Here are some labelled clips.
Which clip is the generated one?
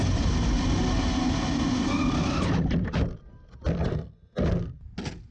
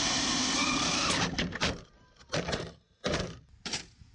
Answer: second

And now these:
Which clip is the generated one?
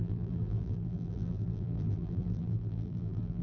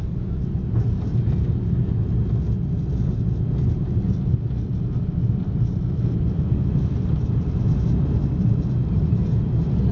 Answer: first